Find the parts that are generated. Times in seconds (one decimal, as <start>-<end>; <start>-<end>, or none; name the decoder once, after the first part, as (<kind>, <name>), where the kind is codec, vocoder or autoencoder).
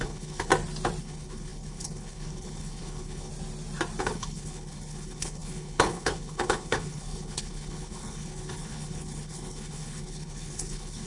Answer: 0.0-0.5 (codec, HILCodec); 1.0-3.3; 4.0-11.1